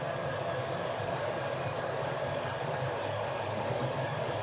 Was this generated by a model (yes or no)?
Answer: yes